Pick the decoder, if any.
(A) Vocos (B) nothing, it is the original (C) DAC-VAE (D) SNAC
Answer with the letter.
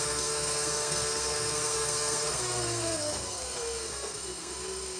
D